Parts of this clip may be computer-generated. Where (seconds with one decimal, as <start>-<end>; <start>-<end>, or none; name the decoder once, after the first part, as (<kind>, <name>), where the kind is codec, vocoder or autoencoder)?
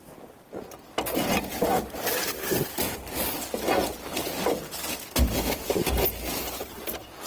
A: none